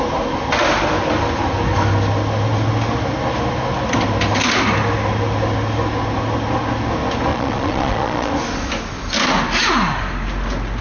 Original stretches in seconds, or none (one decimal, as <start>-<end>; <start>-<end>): 0.0-7.3; 8.3-10.8

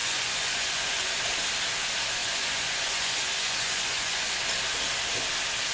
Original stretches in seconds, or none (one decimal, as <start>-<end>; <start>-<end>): 1.2-2.2; 4.3-5.7

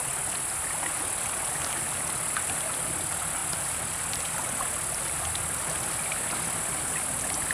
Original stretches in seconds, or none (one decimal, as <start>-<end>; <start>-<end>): 0.0-7.5

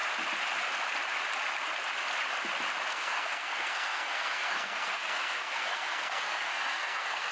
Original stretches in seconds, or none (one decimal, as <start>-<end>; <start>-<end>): 0.0-2.9

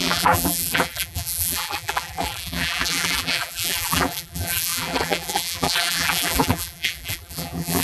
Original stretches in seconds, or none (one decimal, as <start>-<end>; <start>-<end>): none